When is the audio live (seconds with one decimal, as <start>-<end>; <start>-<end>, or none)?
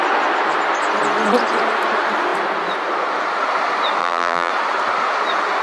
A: 0.0-4.0; 4.5-5.6